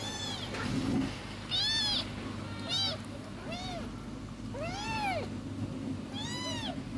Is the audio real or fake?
real